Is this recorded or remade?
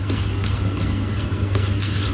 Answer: remade